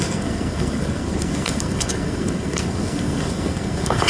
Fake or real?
fake